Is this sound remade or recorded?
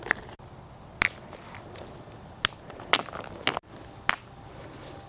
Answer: recorded